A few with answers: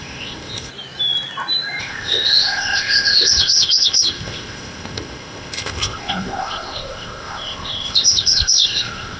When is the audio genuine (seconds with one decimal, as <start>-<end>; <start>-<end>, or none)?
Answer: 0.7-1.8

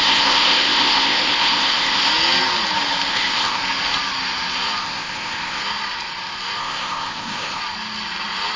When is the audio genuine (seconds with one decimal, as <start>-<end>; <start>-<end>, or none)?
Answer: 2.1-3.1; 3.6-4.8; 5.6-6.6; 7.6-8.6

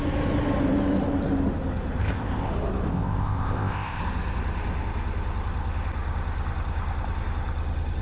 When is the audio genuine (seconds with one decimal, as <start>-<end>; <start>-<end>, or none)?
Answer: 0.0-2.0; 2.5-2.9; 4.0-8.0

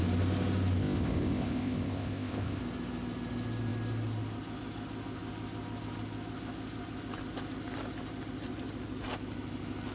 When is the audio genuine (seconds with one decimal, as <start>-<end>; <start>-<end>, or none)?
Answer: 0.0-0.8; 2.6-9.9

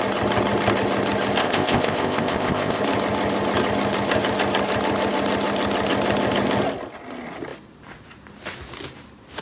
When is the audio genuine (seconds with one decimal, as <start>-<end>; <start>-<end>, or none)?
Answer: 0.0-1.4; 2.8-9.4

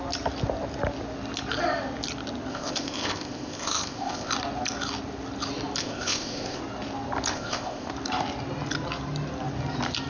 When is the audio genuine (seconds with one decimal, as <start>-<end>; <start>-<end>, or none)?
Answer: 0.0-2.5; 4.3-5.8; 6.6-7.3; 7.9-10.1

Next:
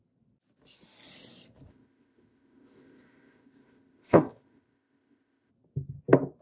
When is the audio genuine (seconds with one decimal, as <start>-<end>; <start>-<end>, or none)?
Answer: 0.0-1.7; 5.5-6.4